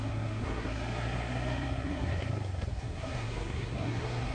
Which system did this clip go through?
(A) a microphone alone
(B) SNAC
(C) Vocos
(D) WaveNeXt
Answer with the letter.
B